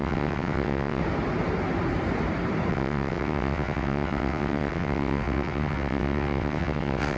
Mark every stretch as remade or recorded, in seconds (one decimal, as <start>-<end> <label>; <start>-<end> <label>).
0.0-1.0 remade; 1.0-2.7 recorded; 2.7-7.2 remade